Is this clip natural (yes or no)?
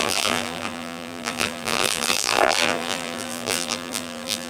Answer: no